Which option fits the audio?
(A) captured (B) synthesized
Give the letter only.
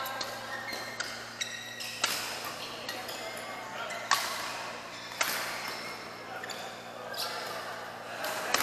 A